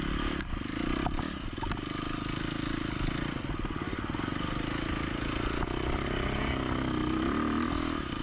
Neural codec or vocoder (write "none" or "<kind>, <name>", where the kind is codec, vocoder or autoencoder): none